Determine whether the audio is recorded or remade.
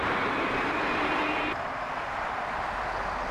recorded